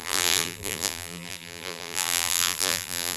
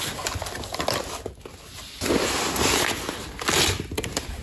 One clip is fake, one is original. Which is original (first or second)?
second